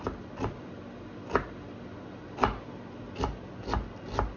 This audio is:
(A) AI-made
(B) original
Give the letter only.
B